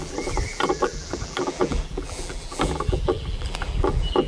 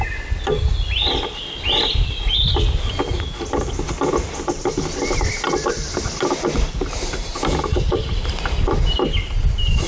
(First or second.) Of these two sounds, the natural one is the second